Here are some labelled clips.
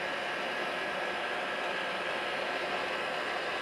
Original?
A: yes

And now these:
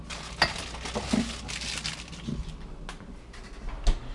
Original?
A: yes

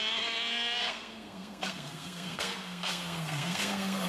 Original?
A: no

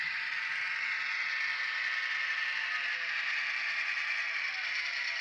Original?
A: yes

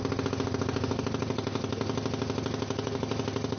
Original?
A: yes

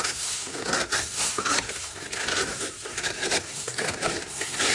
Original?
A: no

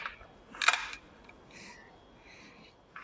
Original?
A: yes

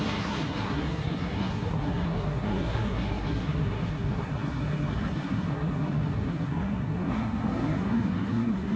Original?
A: no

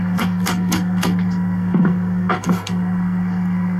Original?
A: no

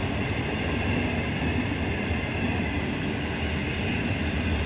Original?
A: yes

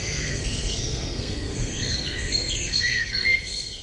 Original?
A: no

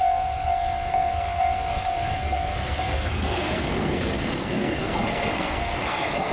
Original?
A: no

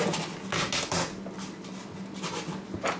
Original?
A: yes